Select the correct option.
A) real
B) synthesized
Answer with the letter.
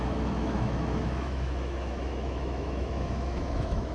B